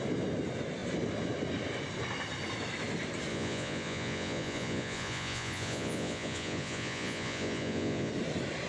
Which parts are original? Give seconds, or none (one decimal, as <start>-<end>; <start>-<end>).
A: 0.0-3.3; 8.1-8.7